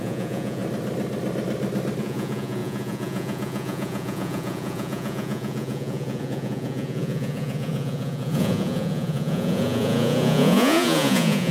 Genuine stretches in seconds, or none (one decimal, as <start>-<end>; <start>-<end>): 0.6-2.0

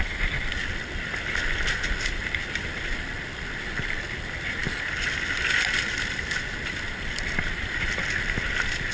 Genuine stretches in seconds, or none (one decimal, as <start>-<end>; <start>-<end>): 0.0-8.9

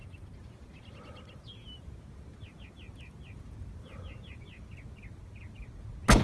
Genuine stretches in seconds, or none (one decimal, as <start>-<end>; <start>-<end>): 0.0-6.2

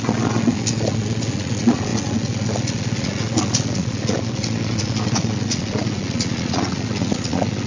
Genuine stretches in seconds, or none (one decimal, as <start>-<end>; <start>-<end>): none

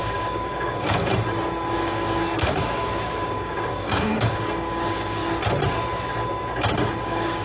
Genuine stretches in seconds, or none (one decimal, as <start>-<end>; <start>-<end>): 1.1-1.7; 5.2-7.0

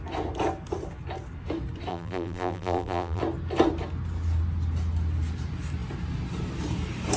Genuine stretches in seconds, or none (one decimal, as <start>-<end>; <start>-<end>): 0.0-1.9; 3.2-7.2

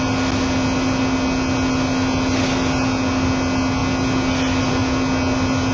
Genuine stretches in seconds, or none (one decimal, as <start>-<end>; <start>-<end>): 0.0-5.7

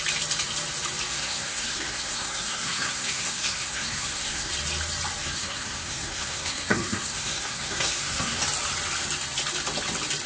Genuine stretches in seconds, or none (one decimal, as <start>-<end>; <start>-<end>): 0.0-1.1; 4.5-5.2; 8.4-10.3